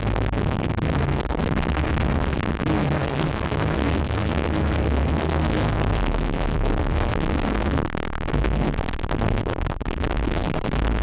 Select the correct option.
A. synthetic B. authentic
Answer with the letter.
A